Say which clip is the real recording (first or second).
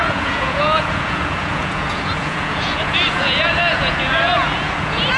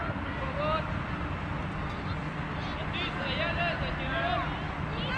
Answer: second